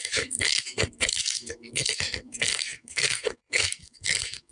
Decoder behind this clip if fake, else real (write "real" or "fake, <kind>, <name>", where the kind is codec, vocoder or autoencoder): fake, codec, SNAC